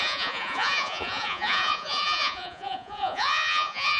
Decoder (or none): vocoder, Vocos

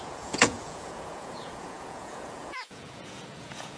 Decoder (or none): vocoder, Vocos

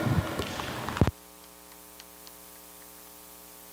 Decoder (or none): none